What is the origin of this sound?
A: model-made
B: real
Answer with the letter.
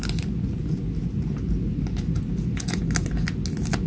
B